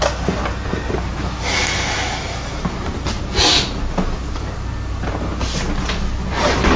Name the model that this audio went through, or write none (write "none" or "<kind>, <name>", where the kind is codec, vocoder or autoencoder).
none